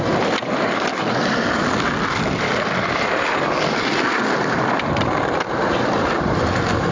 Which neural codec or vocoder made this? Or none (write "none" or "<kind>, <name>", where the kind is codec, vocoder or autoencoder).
vocoder, BigVGAN v2